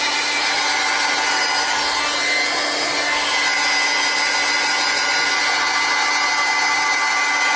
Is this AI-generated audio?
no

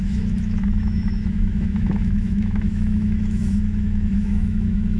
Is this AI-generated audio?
yes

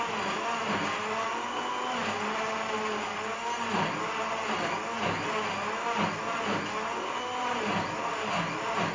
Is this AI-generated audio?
no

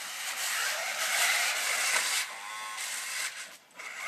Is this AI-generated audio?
no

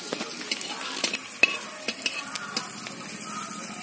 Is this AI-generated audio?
no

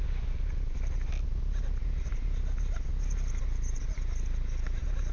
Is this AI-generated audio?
no